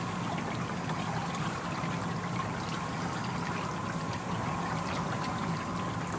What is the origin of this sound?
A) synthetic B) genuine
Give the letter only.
B